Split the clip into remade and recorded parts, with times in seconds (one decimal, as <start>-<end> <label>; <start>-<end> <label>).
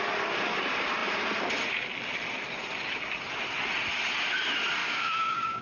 0.0-4.8 recorded; 4.8-5.6 remade